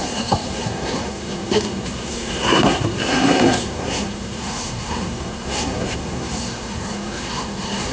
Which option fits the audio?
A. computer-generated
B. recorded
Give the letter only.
A